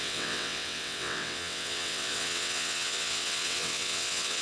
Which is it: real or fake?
fake